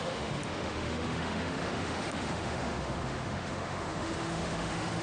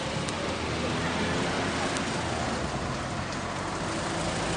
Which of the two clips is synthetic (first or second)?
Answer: first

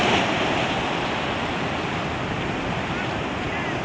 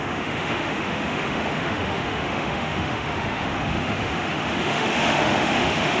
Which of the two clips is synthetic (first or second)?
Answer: second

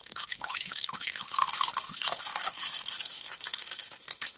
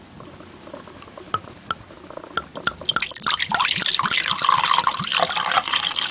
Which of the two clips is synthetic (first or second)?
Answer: first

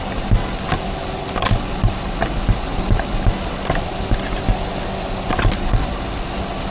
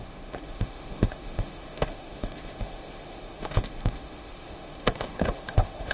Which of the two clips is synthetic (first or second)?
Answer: second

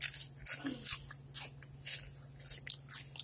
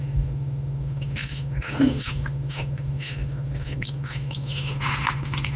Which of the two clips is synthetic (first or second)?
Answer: second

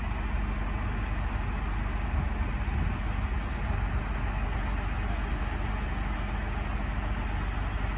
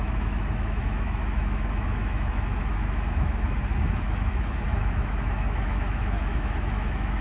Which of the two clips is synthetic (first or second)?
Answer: second